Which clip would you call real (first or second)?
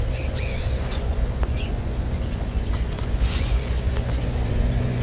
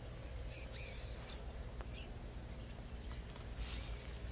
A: second